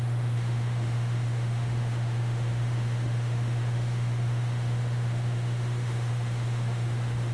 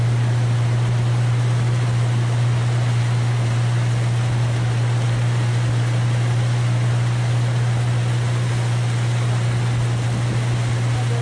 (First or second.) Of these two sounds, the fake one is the first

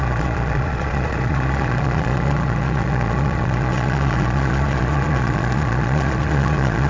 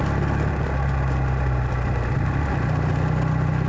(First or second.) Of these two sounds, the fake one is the first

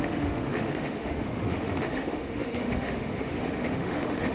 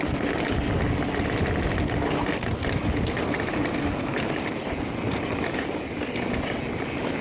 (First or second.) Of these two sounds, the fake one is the first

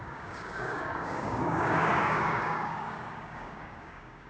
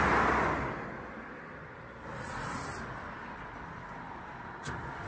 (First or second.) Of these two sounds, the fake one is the first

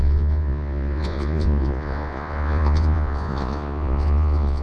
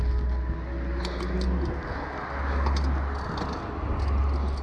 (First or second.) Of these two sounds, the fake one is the first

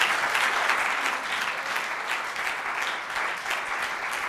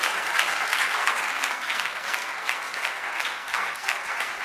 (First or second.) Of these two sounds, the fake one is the second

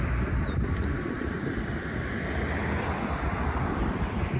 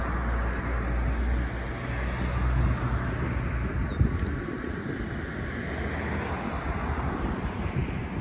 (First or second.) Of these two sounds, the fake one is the first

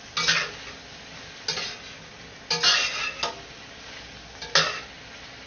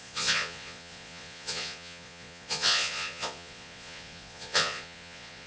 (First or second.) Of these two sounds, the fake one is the second